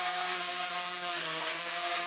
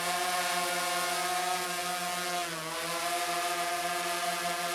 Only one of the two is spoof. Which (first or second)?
first